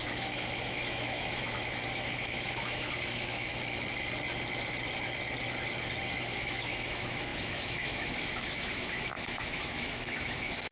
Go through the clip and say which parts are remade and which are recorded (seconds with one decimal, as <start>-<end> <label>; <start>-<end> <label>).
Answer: 0.0-3.5 remade; 3.5-6.1 recorded; 6.1-10.7 remade